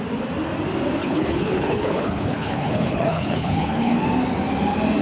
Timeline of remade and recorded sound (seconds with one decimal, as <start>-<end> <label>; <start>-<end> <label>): 0.0-1.0 recorded; 1.0-4.0 remade; 4.0-5.0 recorded